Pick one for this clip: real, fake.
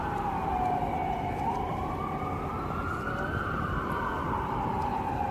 real